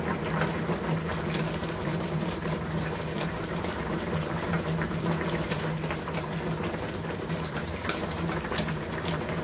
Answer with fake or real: fake